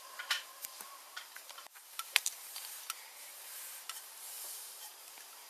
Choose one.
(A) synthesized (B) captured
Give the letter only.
A